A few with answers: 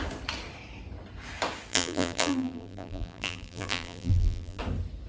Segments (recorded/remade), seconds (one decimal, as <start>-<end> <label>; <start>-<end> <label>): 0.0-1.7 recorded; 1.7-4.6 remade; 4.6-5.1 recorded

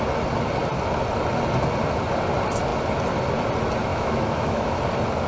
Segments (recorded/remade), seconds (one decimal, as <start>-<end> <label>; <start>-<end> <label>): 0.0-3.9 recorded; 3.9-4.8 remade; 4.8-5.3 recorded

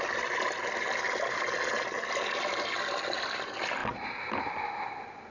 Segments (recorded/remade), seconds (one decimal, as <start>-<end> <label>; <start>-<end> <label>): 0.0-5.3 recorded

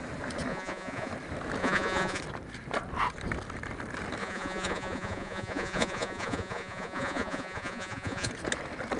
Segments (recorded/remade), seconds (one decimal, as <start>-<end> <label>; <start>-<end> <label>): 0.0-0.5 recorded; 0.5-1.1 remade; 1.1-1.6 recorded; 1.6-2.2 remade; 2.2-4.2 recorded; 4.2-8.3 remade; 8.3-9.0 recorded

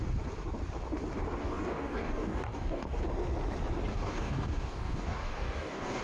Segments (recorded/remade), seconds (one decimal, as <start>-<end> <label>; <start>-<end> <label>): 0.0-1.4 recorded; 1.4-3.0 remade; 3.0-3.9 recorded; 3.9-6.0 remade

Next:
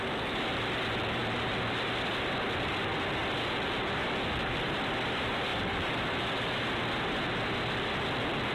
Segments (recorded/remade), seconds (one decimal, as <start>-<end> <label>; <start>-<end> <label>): 0.0-3.2 recorded; 3.2-4.6 remade; 4.6-8.5 recorded

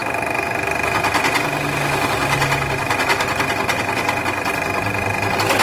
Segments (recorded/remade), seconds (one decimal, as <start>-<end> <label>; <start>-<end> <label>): 0.0-5.6 recorded

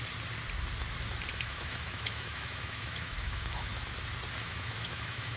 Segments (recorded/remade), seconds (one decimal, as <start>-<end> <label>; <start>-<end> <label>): 0.0-1.3 recorded; 1.3-3.7 remade; 3.7-4.4 recorded; 4.4-5.4 remade